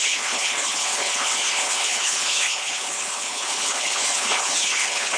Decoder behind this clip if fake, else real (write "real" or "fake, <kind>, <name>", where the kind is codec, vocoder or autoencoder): fake, codec, HILCodec